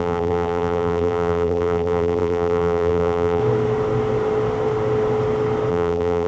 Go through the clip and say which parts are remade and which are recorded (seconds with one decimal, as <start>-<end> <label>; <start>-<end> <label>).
0.0-3.4 remade; 3.4-5.7 recorded; 5.7-6.3 remade